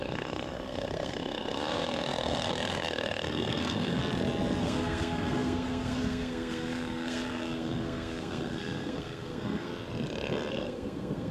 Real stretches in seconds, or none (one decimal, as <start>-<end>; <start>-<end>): 4.0-4.6; 9.7-10.5